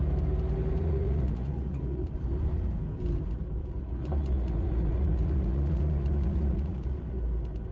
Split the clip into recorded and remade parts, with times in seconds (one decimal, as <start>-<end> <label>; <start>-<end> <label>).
0.0-0.8 recorded; 0.8-2.1 remade; 2.1-3.6 recorded; 3.6-7.2 remade; 7.2-7.7 recorded